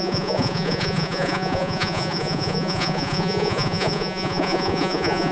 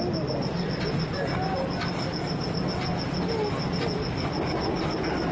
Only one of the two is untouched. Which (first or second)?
second